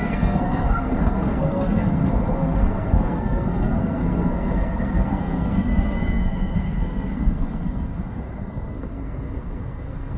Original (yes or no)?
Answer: no